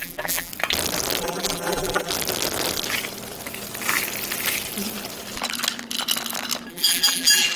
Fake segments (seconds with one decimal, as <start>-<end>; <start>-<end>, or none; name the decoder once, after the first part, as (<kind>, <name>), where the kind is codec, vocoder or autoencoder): 0.0-0.5 (vocoder, BigVGAN v2); 1.2-2.1; 6.7-7.6